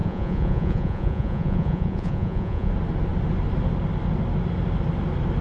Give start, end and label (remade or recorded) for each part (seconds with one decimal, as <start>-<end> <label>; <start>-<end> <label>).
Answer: 0.0-2.7 remade; 2.7-5.4 recorded